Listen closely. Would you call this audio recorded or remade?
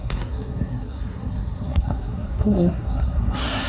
remade